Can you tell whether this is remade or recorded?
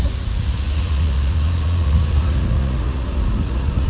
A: remade